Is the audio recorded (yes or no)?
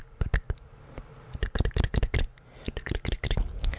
yes